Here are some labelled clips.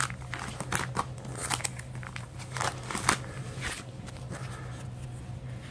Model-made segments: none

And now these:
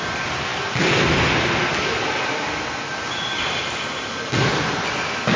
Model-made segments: 0.5-1.1 (vocoder, BigVGAN v2)

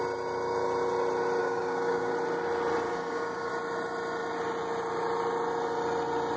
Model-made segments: 1.4-2.1 (codec, DAC); 2.9-3.5

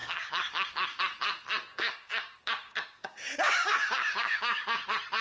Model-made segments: 0.0-1.0 (codec, DAC); 1.7-4.8

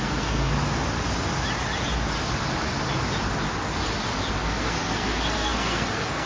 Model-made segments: 0.0-0.5 (codec, SNAC); 4.3-6.3

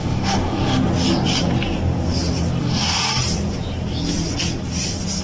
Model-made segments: 0.0-0.9 (autoencoder, DAC-VAE); 2.6-3.0